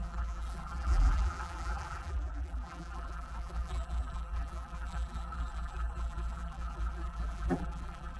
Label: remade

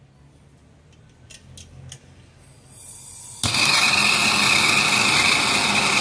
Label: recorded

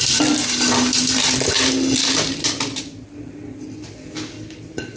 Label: remade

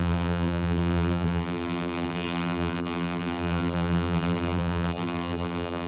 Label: remade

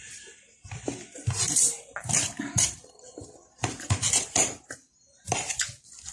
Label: remade